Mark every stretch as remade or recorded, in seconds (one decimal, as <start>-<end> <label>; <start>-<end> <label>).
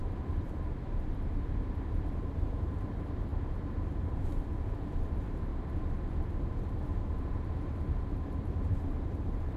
0.0-3.3 remade; 3.3-4.0 recorded; 4.0-5.5 remade; 5.5-7.1 recorded; 7.1-9.6 remade